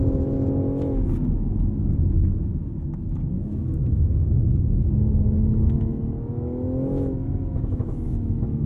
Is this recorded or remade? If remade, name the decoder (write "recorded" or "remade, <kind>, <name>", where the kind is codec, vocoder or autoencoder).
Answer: remade, autoencoder, DAC-VAE